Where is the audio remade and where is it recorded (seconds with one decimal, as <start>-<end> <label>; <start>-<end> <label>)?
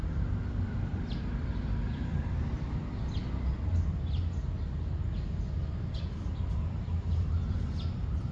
0.0-3.2 remade; 3.2-5.9 recorded; 5.9-8.3 remade